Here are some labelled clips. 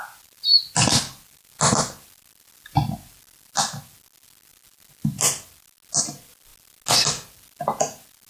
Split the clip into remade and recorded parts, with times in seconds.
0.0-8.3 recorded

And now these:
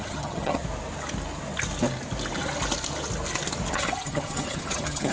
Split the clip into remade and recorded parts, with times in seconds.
0.0-0.6 remade; 0.6-3.7 recorded; 3.7-5.1 remade